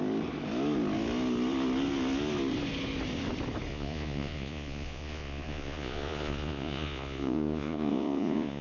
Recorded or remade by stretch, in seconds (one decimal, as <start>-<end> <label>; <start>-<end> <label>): 0.0-3.7 recorded; 3.7-8.6 remade